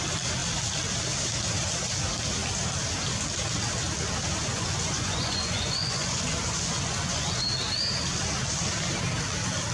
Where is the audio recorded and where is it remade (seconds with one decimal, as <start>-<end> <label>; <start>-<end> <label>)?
0.0-4.5 recorded; 4.5-7.4 remade; 7.4-9.7 recorded